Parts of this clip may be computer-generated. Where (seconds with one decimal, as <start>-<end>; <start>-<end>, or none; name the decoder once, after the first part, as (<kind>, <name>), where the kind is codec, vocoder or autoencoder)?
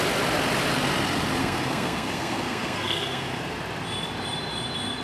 1.4-3.4 (codec, SNAC)